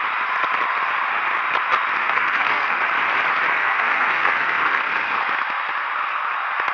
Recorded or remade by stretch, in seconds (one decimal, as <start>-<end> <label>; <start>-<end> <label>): 0.0-2.0 recorded; 2.0-2.8 remade; 2.8-3.6 recorded; 3.6-5.2 remade; 5.2-6.7 recorded